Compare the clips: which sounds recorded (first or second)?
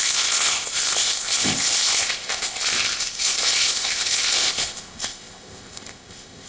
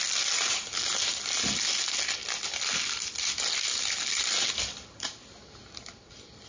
second